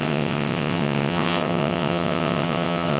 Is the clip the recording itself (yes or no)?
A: no